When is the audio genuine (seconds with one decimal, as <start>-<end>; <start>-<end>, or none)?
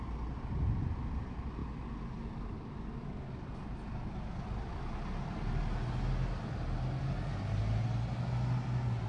0.0-9.1